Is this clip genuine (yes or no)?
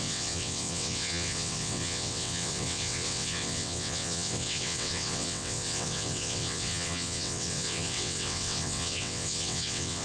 no